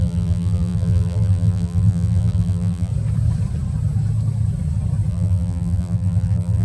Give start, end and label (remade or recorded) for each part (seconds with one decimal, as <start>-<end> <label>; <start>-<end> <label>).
0.0-2.9 remade; 2.9-5.1 recorded; 5.1-6.6 remade